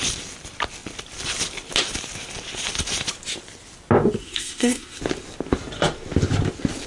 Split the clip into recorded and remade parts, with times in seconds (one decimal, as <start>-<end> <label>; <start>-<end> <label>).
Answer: 0.0-4.2 recorded; 4.2-5.0 remade; 5.0-6.9 recorded